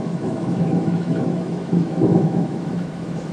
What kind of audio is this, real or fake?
fake